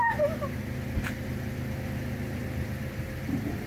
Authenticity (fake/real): real